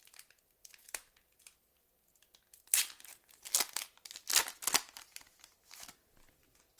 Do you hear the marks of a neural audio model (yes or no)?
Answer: no